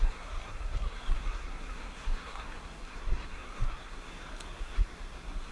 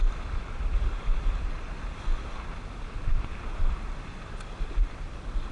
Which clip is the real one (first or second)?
second